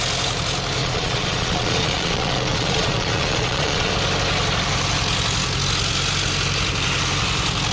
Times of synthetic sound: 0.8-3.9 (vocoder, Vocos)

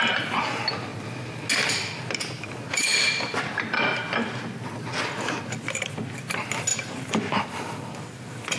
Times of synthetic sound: none